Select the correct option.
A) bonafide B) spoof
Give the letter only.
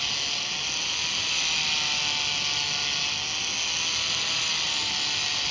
A